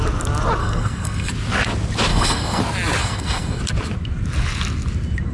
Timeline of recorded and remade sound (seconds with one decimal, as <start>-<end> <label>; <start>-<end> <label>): 0.0-0.6 recorded; 0.6-1.3 remade; 1.3-2.1 recorded; 2.1-2.6 remade; 2.6-3.0 recorded; 3.0-3.6 remade; 3.6-5.3 recorded